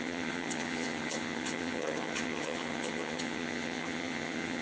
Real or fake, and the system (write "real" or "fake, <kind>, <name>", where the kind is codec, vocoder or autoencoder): fake, vocoder, HiFi-GAN